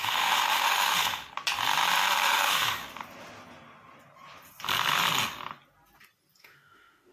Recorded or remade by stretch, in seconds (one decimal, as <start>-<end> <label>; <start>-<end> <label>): 0.0-1.2 remade; 1.2-2.3 recorded; 2.3-2.8 remade; 2.8-6.4 recorded; 6.4-7.1 remade